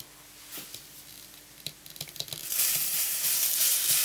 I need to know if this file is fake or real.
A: real